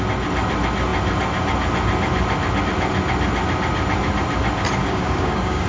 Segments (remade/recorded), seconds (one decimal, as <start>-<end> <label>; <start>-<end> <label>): 0.0-4.8 recorded; 4.8-5.7 remade